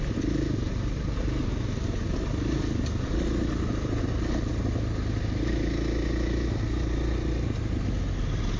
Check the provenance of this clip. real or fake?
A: real